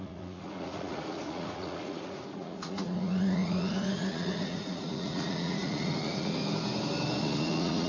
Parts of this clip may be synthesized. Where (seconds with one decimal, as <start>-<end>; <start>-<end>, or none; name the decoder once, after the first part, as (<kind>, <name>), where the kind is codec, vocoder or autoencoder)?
0.0-6.4 (vocoder, Vocos); 7.2-7.9